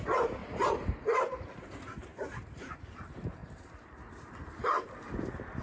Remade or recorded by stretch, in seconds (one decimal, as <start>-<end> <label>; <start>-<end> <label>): 0.0-0.4 remade; 0.4-1.0 recorded; 1.0-5.6 remade

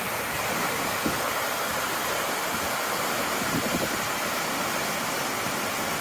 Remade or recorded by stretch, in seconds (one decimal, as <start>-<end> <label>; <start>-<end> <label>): 0.0-6.0 recorded

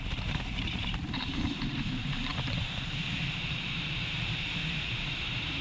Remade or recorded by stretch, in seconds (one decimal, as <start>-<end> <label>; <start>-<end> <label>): 0.0-5.6 remade

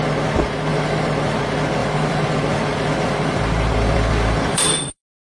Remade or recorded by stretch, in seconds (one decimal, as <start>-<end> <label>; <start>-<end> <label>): 0.0-0.7 recorded; 0.7-1.4 remade; 1.4-1.8 recorded; 1.8-5.0 remade; 5.0-5.4 recorded

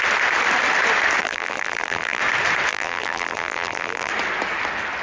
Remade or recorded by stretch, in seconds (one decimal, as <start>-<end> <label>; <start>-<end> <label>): 0.0-1.2 recorded; 1.2-2.2 remade; 2.2-2.7 recorded; 2.7-4.1 remade; 4.1-5.0 recorded

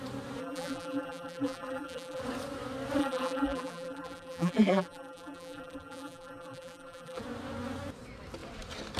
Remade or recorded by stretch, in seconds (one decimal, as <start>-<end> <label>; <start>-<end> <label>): 0.0-0.4 recorded; 0.4-2.2 remade; 2.2-3.0 recorded; 3.0-7.2 remade; 7.2-9.0 recorded

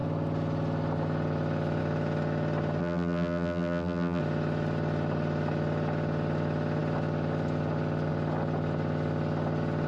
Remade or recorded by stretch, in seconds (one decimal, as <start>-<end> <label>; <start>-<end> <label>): 0.0-2.8 recorded; 2.8-4.2 remade; 4.2-9.9 recorded